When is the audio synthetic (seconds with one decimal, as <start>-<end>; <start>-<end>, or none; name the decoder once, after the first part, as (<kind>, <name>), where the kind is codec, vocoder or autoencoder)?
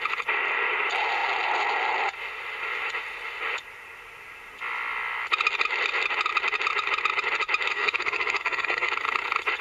7.7-8.9 (codec, SNAC)